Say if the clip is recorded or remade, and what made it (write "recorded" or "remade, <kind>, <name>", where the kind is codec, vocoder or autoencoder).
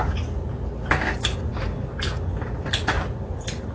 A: recorded